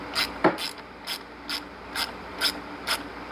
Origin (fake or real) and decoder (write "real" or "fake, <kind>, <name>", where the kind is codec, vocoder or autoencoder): real